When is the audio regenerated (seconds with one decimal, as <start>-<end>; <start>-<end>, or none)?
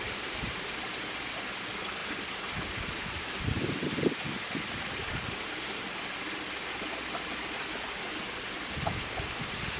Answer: none